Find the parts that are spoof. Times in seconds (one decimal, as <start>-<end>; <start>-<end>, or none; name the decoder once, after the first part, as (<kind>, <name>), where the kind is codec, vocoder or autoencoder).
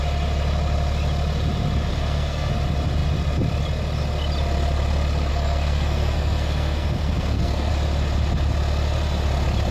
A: 1.9-2.5 (codec, SNAC); 5.3-7.7